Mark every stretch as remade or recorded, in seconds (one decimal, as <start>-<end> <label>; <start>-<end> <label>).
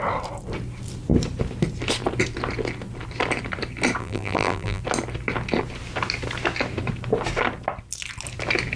0.0-4.0 recorded; 4.0-4.8 remade; 4.8-8.8 recorded